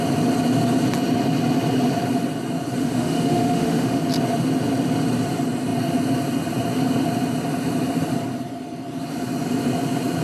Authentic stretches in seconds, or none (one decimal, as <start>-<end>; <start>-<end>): 0.0-2.8; 4.0-10.2